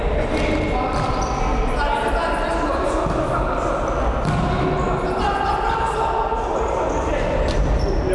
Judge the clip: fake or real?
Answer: real